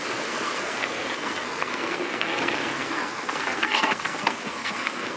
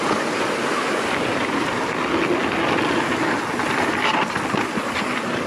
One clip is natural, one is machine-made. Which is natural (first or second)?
second